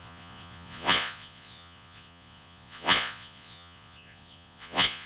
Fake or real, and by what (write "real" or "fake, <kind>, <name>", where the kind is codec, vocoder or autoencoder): fake, vocoder, Vocos